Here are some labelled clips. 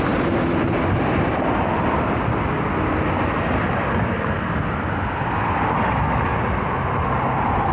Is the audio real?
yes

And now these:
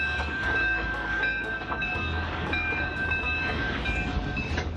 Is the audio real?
no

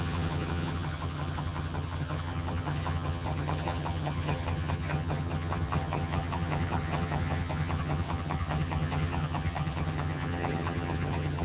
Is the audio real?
no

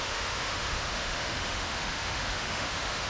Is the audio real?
no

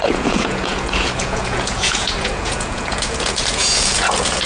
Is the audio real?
no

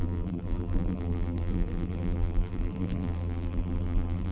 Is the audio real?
no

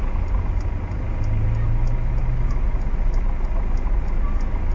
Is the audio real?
yes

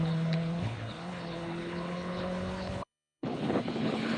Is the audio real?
no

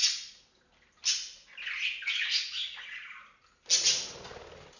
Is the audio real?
yes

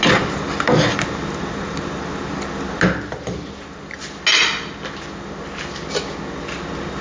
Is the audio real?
yes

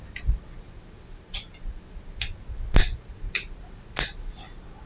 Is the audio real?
yes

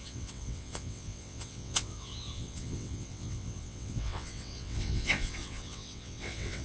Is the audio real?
no